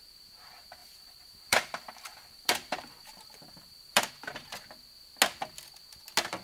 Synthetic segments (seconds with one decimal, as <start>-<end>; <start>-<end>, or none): 0.8-4.1

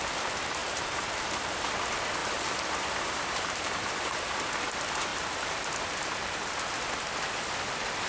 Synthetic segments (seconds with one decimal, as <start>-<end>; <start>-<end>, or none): 0.6-1.5; 2.2-3.9